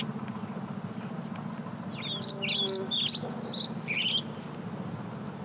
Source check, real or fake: real